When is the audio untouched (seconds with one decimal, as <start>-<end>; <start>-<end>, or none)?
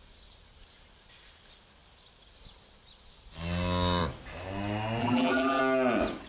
0.0-5.0; 5.6-6.3